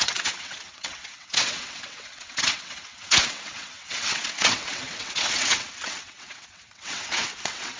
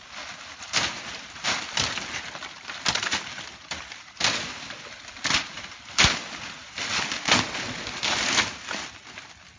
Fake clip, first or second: first